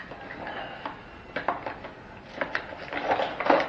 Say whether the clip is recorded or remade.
recorded